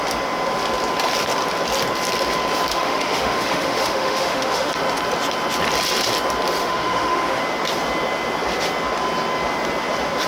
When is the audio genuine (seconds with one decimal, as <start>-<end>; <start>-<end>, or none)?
0.0-2.7; 4.7-6.6; 7.4-10.3